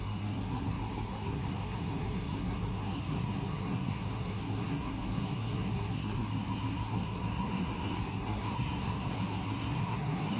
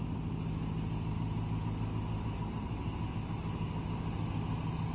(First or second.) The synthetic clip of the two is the first